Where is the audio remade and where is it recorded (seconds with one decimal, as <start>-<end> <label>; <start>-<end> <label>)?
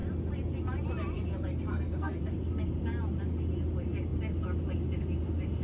0.0-1.7 recorded; 1.7-2.2 remade; 2.2-5.6 recorded